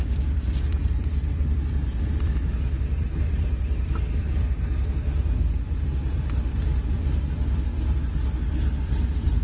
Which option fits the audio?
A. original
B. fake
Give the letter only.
A